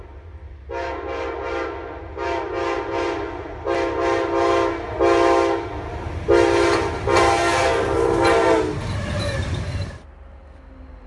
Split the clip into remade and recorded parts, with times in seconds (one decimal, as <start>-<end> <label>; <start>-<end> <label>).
0.0-7.4 recorded; 7.4-8.0 remade; 8.0-11.1 recorded